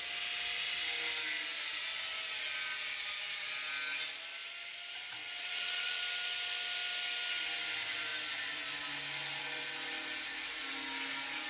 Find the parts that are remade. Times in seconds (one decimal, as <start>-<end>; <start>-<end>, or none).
5.2-6.0